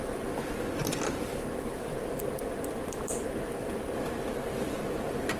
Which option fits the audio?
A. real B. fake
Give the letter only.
B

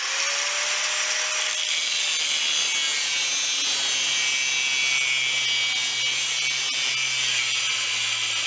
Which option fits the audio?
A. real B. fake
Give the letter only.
A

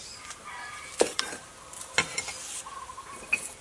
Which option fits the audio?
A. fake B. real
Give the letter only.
B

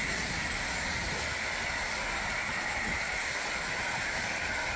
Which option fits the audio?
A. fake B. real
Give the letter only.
B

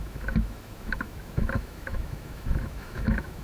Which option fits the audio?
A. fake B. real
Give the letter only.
A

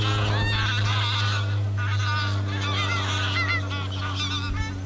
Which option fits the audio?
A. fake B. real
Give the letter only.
B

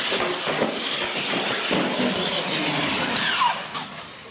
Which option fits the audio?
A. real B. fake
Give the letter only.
A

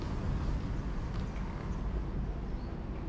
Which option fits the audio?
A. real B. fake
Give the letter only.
A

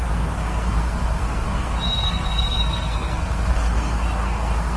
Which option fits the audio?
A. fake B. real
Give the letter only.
A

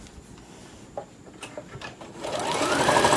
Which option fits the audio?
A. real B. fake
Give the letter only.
B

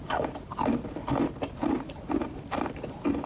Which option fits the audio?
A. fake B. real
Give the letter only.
A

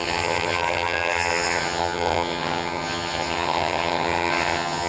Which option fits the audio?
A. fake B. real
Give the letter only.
A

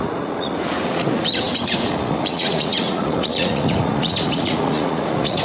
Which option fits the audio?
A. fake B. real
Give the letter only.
A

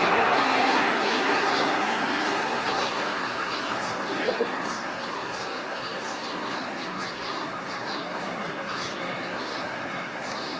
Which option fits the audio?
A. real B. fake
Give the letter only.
B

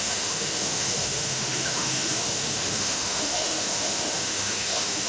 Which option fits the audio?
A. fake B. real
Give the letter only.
A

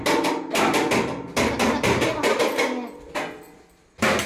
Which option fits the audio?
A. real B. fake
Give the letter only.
A